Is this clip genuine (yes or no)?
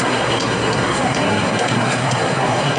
no